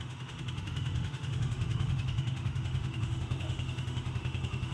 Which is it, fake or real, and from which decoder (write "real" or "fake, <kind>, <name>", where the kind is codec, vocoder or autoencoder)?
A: fake, autoencoder, DAC-VAE